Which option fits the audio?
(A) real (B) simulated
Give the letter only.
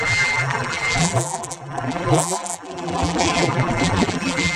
B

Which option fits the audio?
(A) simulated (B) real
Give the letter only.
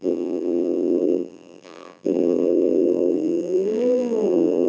A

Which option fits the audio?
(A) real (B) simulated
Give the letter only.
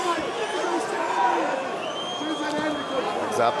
A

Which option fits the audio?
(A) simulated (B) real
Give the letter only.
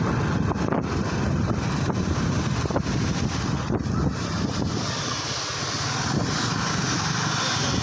B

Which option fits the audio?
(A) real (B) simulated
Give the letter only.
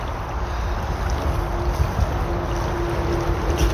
A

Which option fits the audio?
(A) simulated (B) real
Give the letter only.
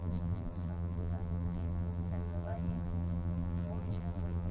A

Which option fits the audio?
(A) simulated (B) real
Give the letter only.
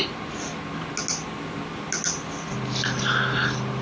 B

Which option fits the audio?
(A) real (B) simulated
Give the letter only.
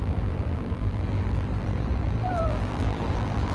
B